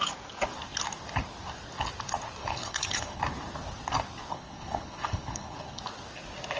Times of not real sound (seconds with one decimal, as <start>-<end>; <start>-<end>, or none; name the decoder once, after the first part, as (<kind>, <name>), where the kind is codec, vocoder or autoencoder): 2.4-3.2 (codec, HILCodec); 4.3-5.8